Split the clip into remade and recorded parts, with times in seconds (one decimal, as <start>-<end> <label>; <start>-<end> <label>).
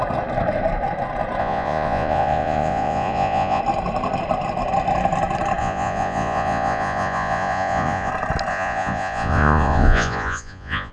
0.0-1.4 recorded; 1.4-3.6 remade; 3.6-5.6 recorded; 5.6-8.1 remade; 8.1-8.5 recorded; 8.5-10.9 remade